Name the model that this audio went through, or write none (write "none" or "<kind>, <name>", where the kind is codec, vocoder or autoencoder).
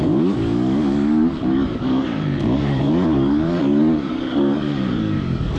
codec, DAC